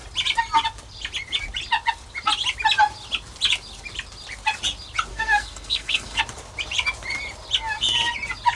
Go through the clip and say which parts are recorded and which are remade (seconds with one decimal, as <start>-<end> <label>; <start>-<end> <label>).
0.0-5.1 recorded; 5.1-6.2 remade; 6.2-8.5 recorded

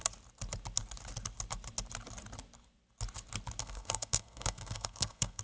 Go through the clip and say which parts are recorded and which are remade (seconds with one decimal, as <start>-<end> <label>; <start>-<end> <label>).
0.0-3.6 recorded; 3.6-5.4 remade

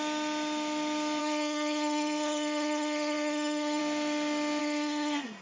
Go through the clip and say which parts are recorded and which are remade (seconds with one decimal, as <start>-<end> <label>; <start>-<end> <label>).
0.0-1.2 recorded; 1.2-3.8 remade; 3.8-4.6 recorded; 4.6-5.4 remade